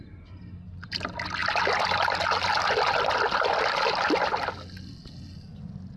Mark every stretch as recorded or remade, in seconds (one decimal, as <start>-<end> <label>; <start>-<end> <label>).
0.0-6.0 recorded